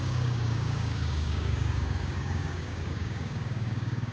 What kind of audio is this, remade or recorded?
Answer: remade